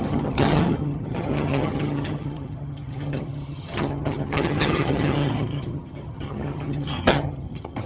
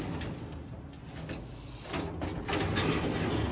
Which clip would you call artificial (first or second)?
first